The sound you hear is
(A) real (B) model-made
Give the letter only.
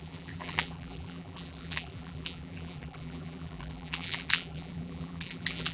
B